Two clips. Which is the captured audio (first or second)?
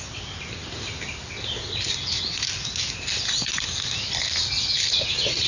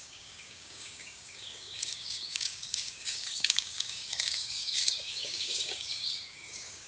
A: first